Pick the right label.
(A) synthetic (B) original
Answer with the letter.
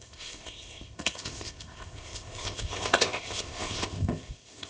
A